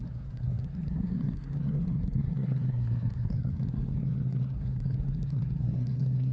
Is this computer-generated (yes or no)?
yes